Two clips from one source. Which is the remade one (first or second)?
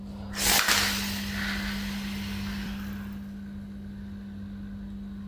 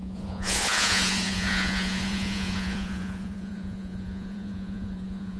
second